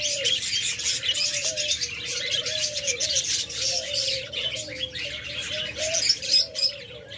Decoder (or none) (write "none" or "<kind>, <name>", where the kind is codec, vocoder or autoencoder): none